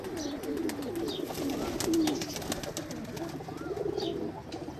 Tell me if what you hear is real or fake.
real